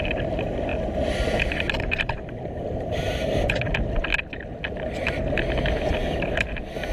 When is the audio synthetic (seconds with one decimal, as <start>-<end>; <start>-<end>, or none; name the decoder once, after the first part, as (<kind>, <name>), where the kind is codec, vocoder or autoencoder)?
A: none

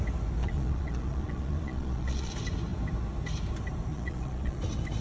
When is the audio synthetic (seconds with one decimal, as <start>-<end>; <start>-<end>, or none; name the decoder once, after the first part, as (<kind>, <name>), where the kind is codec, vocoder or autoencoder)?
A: 0.4-2.3 (vocoder, Vocos); 3.9-4.6